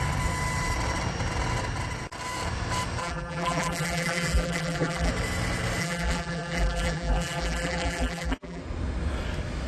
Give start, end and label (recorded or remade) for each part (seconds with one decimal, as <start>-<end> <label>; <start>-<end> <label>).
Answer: 0.0-3.0 recorded; 3.0-5.1 remade; 5.1-5.8 recorded; 5.8-8.6 remade; 8.6-9.7 recorded